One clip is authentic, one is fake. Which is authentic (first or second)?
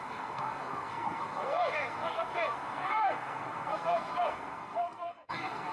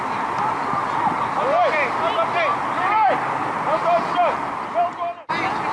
second